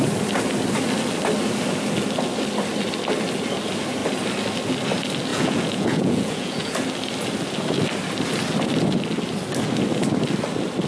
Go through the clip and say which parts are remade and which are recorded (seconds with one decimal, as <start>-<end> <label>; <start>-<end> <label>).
0.0-5.3 recorded; 5.3-6.7 remade; 6.7-10.9 recorded